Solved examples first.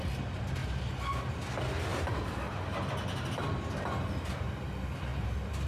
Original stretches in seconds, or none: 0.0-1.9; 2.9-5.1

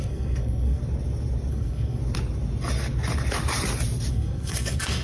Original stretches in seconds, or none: 0.8-1.5; 2.0-4.1